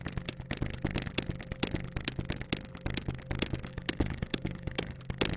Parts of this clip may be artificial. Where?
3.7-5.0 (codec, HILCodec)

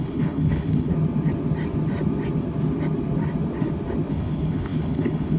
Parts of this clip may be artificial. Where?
0.0-0.9 (codec, HILCodec); 4.1-5.4

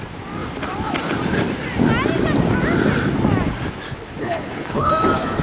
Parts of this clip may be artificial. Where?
4.2-4.9 (codec, HILCodec)

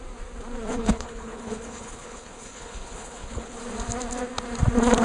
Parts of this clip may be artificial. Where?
0.7-3.6 (codec, HILCodec)

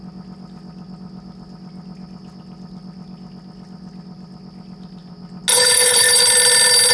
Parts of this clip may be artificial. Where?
5.5-6.2 (codec, HILCodec)

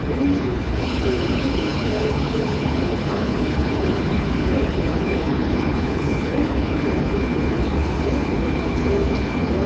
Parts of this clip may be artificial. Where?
0.0-9.7 (codec, HILCodec)

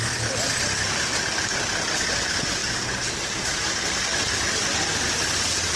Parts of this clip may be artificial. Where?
none

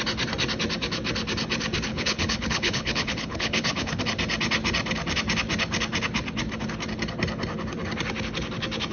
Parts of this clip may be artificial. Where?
1.9-4.0 (codec, HILCodec)